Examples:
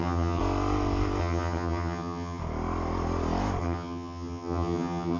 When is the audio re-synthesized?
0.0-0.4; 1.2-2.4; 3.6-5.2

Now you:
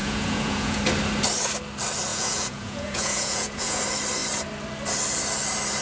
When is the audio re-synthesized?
0.0-0.8; 2.1-3.8

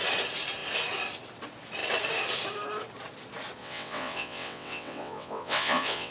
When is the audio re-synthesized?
3.6-6.1

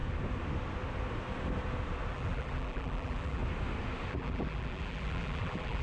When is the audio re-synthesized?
2.1-3.4; 4.1-5.8

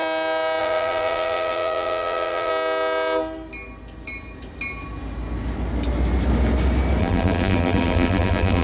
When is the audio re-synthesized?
0.6-2.5; 7.0-8.6

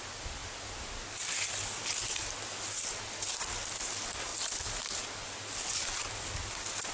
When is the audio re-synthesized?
none

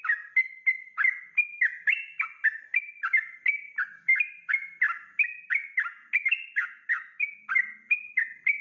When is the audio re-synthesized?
2.7-4.3

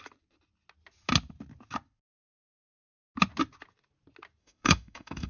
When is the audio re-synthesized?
4.4-5.3